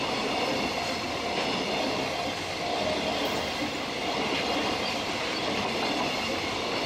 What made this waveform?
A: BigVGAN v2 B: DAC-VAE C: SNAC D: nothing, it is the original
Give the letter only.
D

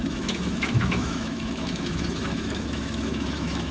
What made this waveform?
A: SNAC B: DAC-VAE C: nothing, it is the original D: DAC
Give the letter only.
B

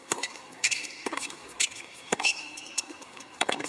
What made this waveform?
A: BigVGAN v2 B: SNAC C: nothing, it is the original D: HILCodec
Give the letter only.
B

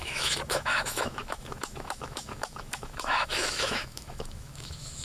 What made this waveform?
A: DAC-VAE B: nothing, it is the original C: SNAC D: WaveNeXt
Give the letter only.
A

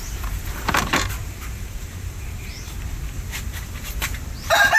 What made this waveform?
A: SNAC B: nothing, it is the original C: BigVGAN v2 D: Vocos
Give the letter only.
C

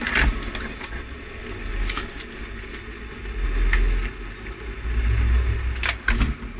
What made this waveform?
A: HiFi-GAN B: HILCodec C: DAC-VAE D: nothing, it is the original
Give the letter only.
D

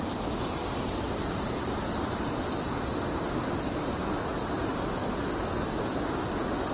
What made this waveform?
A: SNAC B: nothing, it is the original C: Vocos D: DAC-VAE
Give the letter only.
B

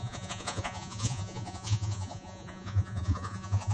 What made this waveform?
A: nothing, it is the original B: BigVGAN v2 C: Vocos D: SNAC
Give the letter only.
C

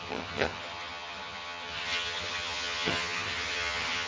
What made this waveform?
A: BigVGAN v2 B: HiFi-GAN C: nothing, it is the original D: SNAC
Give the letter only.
B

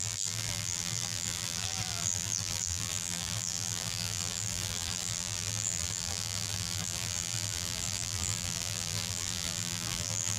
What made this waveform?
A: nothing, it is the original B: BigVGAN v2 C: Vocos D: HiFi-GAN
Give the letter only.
B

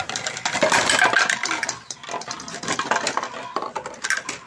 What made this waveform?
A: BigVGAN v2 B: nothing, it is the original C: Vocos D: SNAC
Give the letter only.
B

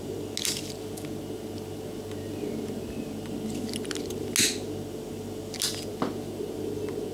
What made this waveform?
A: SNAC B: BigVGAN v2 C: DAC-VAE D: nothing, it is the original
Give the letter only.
D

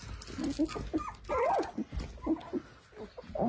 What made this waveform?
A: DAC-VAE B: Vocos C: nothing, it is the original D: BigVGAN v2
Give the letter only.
C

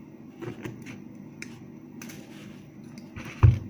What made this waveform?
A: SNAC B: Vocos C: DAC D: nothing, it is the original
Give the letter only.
D